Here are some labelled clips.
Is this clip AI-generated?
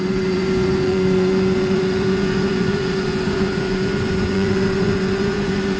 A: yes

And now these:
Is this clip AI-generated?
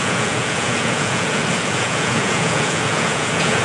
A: yes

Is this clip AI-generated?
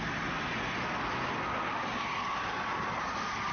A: no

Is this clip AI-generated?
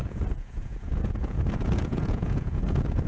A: yes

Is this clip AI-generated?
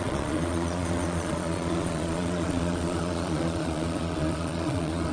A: yes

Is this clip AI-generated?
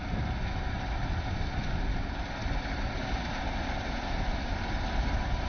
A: no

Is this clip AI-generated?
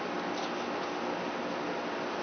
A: no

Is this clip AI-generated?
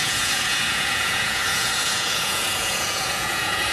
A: yes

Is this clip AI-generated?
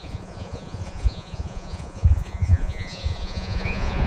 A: yes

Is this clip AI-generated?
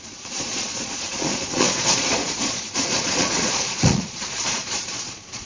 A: yes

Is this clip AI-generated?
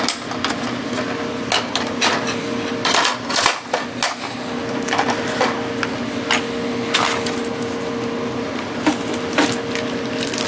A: no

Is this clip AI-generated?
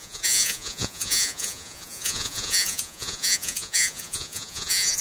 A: yes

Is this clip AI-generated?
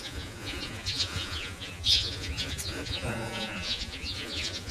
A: yes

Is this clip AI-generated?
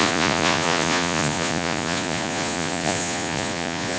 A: yes